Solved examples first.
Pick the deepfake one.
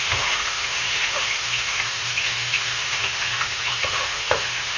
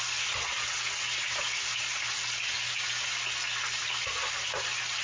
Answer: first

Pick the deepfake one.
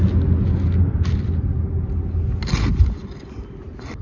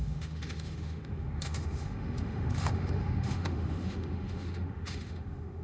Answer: second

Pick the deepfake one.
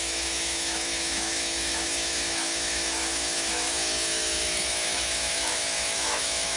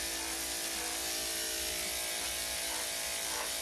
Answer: first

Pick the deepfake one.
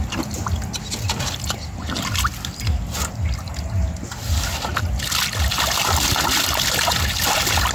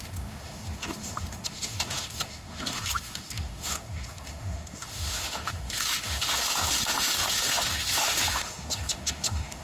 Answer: second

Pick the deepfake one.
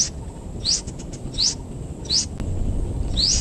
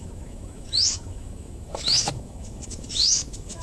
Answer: second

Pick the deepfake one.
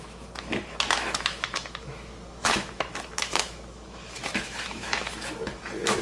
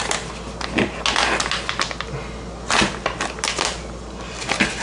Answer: first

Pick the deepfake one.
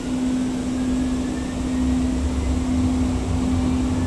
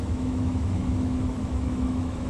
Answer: second